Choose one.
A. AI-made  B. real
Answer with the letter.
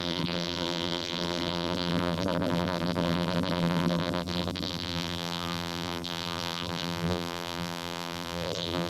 A